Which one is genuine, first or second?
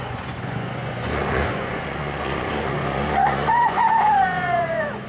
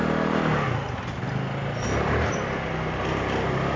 second